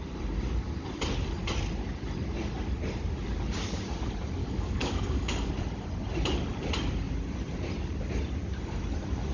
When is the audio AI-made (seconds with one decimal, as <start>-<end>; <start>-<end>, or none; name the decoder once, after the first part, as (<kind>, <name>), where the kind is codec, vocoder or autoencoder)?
4.4-5.5 (codec, DAC)